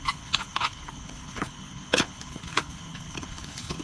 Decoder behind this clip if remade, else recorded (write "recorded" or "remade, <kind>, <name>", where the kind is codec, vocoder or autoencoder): remade, codec, HILCodec